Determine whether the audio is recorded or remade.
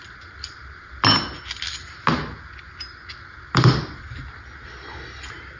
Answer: recorded